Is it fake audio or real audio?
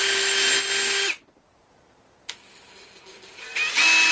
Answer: real